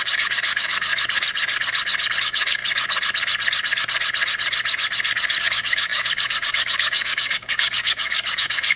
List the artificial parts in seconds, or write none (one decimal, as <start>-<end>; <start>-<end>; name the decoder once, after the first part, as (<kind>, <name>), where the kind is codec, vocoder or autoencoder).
0.0-0.9 (codec, DAC); 2.2-2.6; 5.4-8.8